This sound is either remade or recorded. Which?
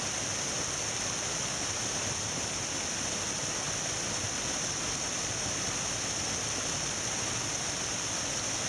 recorded